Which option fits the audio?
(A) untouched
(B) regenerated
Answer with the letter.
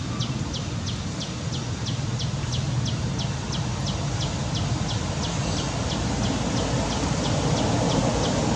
A